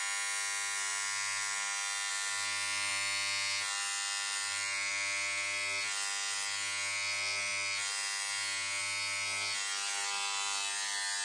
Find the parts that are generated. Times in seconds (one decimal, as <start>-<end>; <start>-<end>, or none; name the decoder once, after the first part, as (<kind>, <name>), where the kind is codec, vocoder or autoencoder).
none